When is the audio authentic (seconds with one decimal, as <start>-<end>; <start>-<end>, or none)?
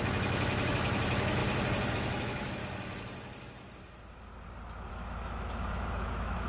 1.4-1.9; 2.6-4.9